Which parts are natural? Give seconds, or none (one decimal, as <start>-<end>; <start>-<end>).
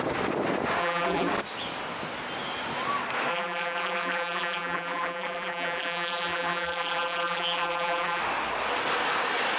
0.0-0.8; 1.3-3.3; 8.2-9.6